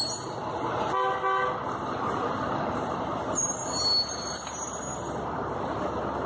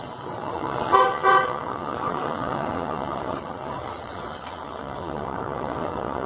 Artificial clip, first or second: second